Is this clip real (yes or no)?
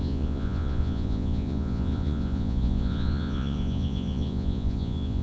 no